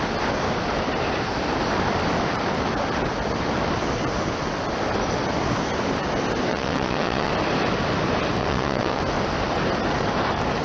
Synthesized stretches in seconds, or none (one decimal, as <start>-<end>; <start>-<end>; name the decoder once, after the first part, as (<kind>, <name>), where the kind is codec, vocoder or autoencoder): 6.5-7.3 (vocoder, WaveNeXt); 8.4-9.0